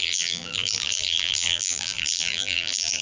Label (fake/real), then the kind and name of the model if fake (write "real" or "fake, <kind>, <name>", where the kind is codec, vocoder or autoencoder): fake, vocoder, BigVGAN v2